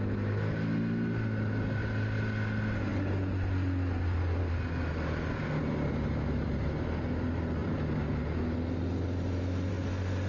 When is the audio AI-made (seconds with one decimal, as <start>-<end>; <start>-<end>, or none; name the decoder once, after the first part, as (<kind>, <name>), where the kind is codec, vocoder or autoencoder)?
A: none